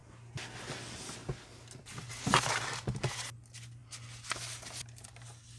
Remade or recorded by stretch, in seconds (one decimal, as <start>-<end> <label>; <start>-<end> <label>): 0.0-5.6 recorded